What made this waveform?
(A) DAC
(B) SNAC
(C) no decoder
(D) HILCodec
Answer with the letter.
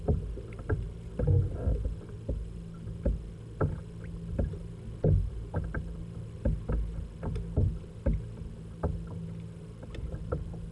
C